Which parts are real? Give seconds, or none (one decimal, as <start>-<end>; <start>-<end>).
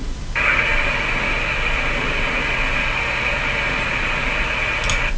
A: 0.0-5.2